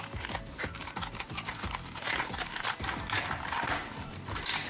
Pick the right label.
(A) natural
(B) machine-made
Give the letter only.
A